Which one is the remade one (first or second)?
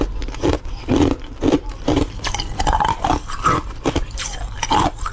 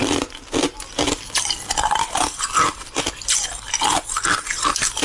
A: first